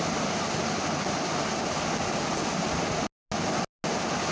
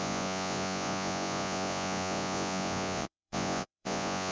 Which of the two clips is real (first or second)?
first